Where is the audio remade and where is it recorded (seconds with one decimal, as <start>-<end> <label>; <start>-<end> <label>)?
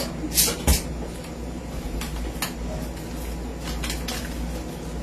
0.0-0.7 recorded; 0.7-2.2 remade; 2.2-5.0 recorded